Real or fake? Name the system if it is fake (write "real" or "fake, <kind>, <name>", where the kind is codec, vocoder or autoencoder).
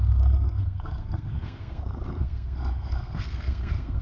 fake, codec, SNAC